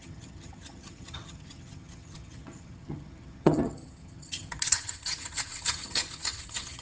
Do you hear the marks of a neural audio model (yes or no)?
yes